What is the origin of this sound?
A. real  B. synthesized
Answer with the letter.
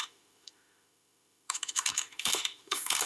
B